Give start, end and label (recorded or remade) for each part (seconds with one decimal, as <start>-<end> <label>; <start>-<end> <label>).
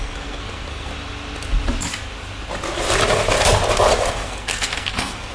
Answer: 0.0-0.9 remade; 0.9-4.1 recorded; 4.1-5.3 remade